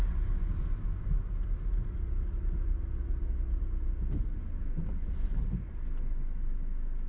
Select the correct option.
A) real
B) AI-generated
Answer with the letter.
A